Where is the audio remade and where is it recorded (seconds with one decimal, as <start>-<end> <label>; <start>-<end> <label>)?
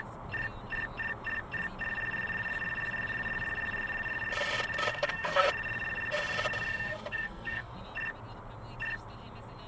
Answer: 0.0-4.9 recorded; 4.9-5.4 remade; 5.4-6.7 recorded; 6.7-7.7 remade; 7.7-9.7 recorded